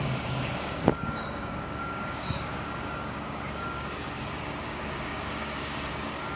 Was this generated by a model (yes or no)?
yes